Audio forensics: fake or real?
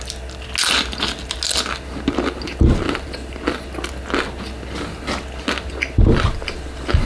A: real